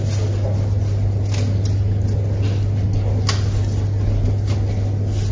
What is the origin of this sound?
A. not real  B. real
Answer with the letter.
B